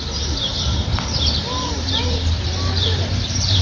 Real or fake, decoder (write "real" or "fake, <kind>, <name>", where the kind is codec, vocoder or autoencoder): fake, vocoder, BigVGAN v2